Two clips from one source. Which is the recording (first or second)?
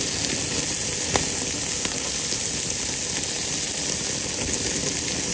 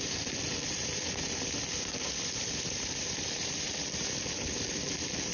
first